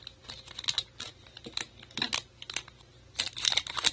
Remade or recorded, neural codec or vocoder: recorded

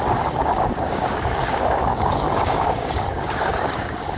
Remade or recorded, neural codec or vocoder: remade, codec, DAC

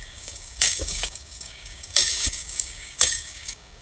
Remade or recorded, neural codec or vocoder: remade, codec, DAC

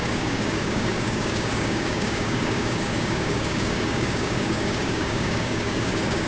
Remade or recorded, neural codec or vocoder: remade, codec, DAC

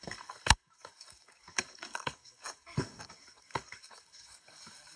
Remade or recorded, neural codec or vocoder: remade, codec, DAC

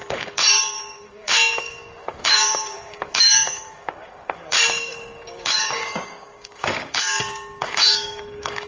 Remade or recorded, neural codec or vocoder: remade, codec, DAC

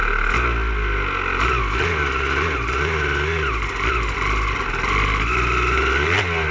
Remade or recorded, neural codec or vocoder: recorded